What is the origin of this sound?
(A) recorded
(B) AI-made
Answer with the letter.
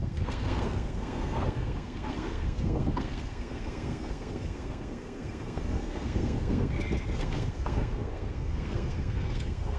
B